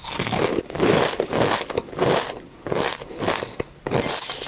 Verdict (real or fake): real